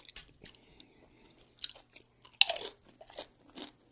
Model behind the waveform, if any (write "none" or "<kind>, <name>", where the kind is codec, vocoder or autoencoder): none